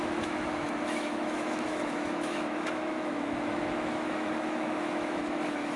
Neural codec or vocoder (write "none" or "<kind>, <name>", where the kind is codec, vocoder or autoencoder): autoencoder, DAC-VAE